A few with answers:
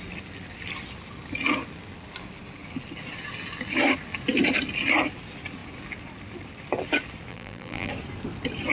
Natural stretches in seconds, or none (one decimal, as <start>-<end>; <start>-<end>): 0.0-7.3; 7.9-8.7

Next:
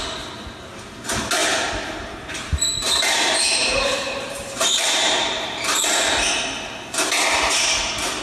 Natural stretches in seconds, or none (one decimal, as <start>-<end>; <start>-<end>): 0.0-1.4; 5.8-8.2

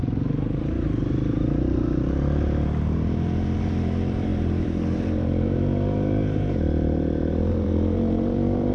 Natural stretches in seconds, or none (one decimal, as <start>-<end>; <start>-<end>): none

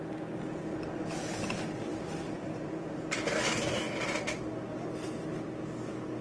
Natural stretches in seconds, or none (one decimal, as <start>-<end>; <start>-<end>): 0.0-1.9; 3.2-6.2

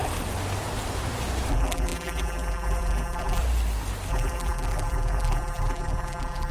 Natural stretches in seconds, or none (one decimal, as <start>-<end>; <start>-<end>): 0.0-1.5; 3.4-4.1

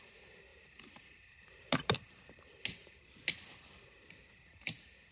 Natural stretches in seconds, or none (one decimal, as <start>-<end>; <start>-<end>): 0.0-0.5; 2.3-5.1

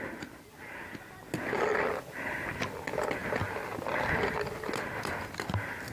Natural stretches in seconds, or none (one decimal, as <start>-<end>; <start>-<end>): 0.0-5.9

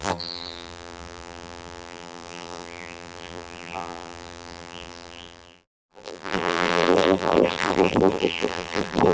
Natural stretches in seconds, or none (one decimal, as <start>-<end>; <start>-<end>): none